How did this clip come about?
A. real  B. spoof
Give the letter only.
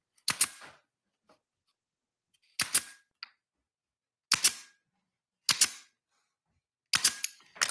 A